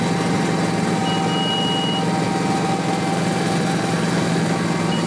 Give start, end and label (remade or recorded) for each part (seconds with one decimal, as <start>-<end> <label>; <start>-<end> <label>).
0.0-5.1 recorded

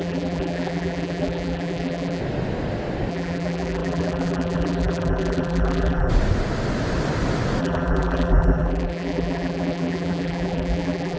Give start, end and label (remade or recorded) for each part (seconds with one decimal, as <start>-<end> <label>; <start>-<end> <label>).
0.0-2.2 remade; 2.2-3.1 recorded; 3.1-6.1 remade; 6.1-7.6 recorded; 7.6-11.2 remade

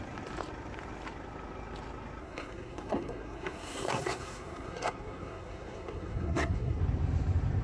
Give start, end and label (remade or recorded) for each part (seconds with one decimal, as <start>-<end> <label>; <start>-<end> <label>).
0.0-2.2 recorded; 2.2-6.8 remade; 6.8-7.6 recorded

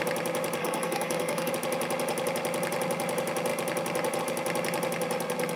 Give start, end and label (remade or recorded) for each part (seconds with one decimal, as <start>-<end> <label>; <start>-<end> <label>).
0.0-0.6 recorded; 0.6-1.5 remade; 1.5-5.6 recorded

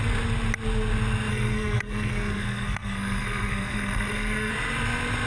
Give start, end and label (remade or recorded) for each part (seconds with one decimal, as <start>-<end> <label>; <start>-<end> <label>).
0.0-1.3 recorded; 1.3-4.5 remade; 4.5-5.3 recorded

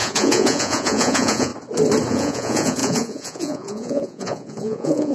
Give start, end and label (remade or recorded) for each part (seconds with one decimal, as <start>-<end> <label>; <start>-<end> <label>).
0.0-1.5 remade; 1.5-2.1 recorded; 2.1-5.1 remade